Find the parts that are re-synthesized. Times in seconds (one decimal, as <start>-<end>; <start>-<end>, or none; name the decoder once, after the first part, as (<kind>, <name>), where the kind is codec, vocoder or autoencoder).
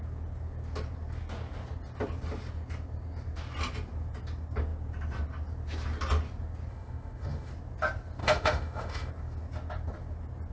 6.7-7.5 (autoencoder, DAC-VAE); 8.2-9.1